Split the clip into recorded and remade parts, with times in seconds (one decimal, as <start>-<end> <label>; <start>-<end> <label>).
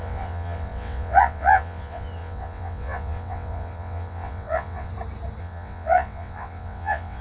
0.0-4.9 remade; 4.9-5.4 recorded; 5.4-7.2 remade